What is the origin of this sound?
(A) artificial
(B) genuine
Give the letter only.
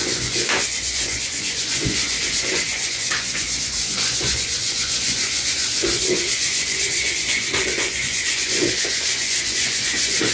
A